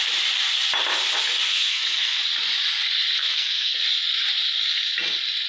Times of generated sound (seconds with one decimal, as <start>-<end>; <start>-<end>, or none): 1.5-2.2; 3.2-3.8